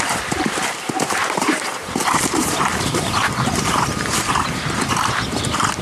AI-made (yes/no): yes